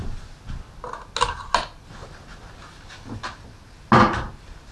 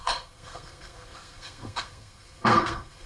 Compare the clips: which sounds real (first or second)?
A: first